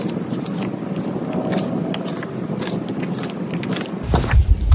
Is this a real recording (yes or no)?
yes